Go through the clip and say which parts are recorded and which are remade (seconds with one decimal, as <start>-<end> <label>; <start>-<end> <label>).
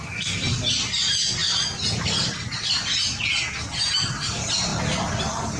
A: 0.0-5.6 recorded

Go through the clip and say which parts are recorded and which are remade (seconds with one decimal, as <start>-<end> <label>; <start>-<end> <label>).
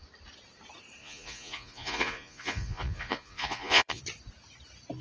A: 0.0-1.0 recorded; 1.0-4.0 remade; 4.0-5.0 recorded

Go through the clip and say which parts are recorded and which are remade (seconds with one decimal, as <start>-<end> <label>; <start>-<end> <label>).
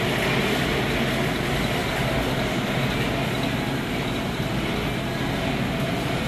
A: 0.0-6.3 recorded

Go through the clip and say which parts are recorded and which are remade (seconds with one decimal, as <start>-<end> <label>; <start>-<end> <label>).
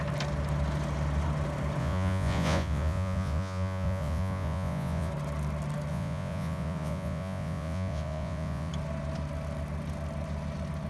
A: 0.0-1.8 recorded; 1.8-5.1 remade; 5.1-5.9 recorded; 5.9-8.7 remade; 8.7-10.9 recorded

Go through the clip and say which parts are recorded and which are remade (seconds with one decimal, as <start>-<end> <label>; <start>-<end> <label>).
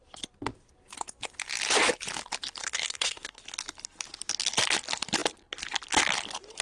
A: 0.0-2.6 recorded; 2.6-3.4 remade; 3.4-6.6 recorded